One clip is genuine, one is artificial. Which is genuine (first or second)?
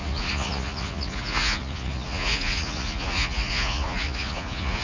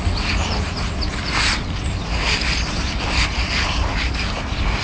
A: second